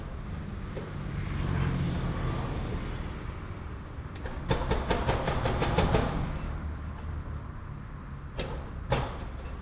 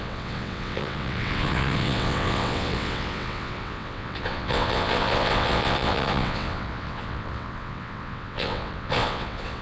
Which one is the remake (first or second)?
second